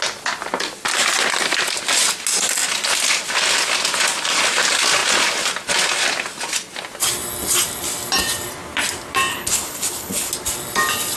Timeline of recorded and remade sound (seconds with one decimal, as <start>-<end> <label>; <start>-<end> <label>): 0.0-9.3 recorded; 9.3-10.3 remade; 10.3-11.2 recorded